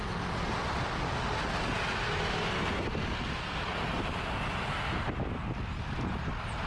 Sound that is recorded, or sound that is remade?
recorded